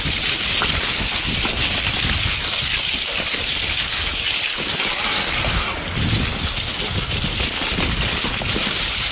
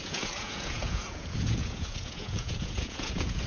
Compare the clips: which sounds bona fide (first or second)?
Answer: first